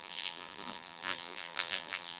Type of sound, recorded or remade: remade